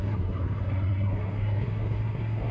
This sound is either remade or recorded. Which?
remade